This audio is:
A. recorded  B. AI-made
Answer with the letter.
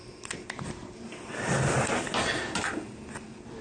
A